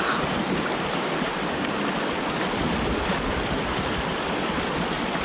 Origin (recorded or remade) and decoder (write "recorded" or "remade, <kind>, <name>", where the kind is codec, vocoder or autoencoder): remade, vocoder, BigVGAN v2